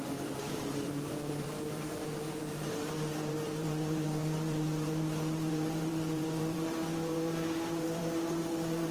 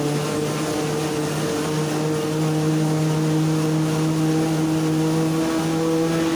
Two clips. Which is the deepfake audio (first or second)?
first